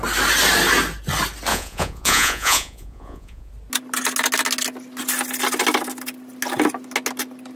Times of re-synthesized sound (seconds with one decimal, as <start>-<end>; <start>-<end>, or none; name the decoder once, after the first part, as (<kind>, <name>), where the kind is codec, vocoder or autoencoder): 1.5-3.5 (vocoder, Vocos)